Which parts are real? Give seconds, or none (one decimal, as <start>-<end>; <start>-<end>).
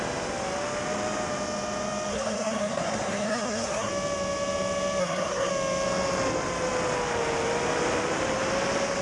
0.0-2.1; 3.9-5.0; 5.5-9.0